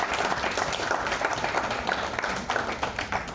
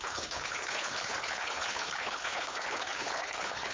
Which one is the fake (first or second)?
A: second